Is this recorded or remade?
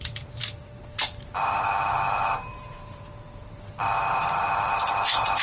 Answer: remade